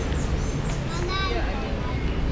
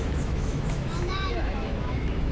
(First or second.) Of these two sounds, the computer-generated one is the second